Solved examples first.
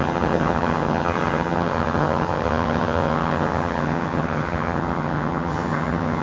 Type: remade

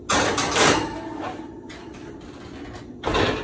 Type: recorded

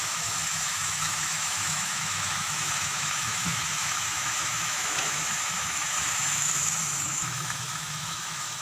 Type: remade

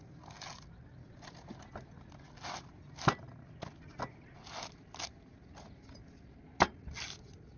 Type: recorded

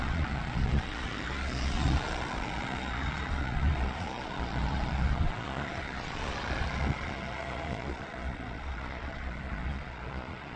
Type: remade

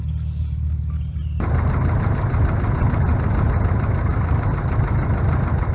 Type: recorded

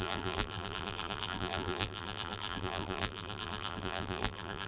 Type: remade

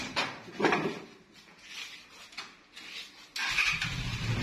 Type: recorded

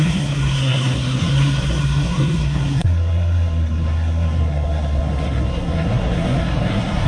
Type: remade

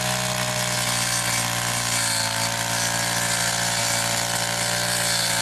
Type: recorded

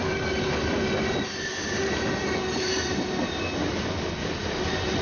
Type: recorded